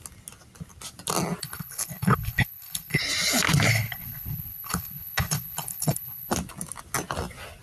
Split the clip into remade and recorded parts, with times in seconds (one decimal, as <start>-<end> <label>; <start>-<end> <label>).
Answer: 0.0-1.4 recorded; 1.4-3.0 remade; 3.0-3.7 recorded; 3.7-6.3 remade; 6.3-7.6 recorded